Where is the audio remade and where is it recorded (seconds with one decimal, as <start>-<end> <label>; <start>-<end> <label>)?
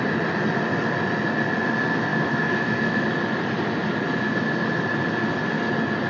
0.0-2.1 recorded; 2.1-3.1 remade; 3.1-6.1 recorded